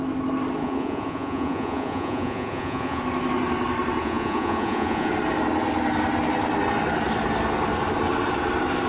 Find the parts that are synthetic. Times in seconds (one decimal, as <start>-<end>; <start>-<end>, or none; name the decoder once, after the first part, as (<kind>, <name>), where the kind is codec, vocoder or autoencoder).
0.6-3.0 (vocoder, Vocos); 4.0-5.1